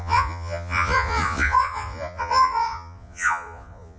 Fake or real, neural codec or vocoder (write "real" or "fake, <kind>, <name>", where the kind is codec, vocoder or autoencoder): fake, vocoder, Vocos